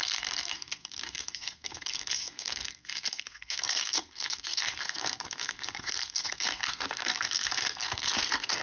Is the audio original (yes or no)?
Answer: no